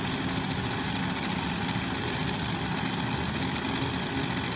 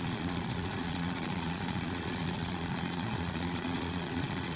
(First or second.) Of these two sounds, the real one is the first